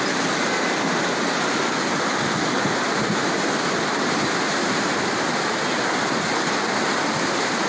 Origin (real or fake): real